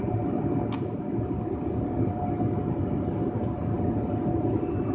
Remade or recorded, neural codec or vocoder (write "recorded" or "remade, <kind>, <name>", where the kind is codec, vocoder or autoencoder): recorded